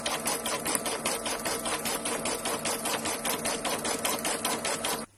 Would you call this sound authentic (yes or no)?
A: yes